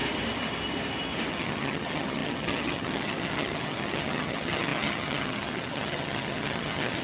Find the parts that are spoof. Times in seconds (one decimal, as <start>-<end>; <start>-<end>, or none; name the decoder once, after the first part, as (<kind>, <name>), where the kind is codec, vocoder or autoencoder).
1.3-7.0 (vocoder, HiFi-GAN)